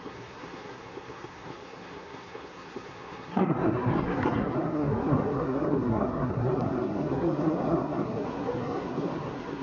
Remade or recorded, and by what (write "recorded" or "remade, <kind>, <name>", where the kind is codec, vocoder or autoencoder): remade, codec, SNAC